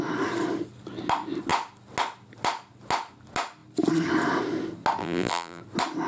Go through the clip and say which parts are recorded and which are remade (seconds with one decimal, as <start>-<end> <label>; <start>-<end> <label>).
0.0-5.0 recorded; 5.0-5.6 remade; 5.6-6.1 recorded